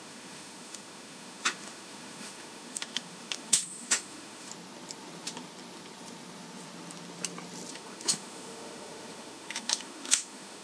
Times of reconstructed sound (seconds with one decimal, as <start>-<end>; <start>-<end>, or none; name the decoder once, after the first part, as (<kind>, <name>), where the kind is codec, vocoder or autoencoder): 0.0-4.5 (autoencoder, DAC-VAE); 7.7-10.6